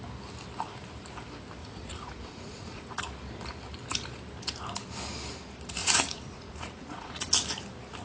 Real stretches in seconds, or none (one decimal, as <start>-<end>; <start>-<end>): 0.0-1.6; 3.0-5.8; 7.3-8.0